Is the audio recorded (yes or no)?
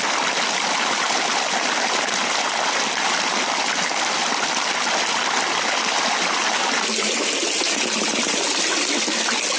yes